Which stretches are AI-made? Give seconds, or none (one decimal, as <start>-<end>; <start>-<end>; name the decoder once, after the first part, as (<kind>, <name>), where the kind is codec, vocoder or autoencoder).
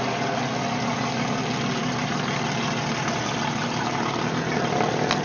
none